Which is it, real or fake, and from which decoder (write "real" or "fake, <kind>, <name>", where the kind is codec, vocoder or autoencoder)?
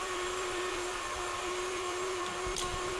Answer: fake, vocoder, BigVGAN v2